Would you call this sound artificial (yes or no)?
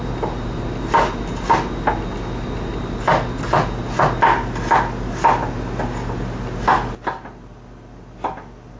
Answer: no